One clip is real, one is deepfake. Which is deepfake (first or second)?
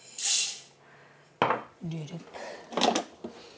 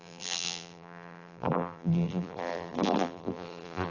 second